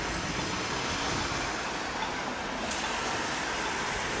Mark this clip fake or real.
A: real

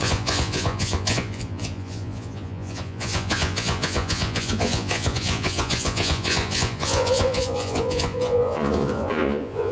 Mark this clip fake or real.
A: fake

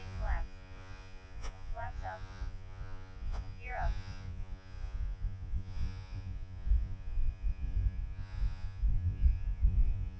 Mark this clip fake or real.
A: fake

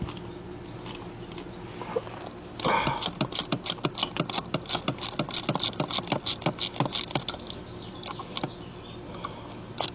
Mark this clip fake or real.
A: real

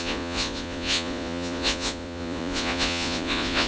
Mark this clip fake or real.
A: fake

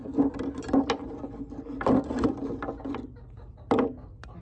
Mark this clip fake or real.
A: real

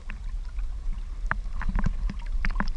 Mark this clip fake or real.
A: real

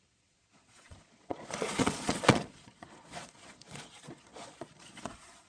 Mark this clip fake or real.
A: fake